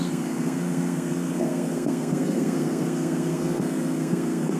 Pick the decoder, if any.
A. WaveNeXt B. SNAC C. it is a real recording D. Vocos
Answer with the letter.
B